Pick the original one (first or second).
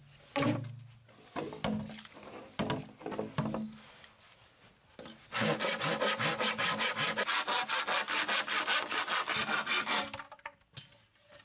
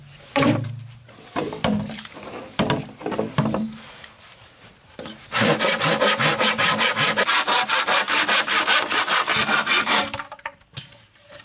first